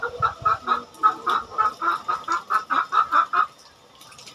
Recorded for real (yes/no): yes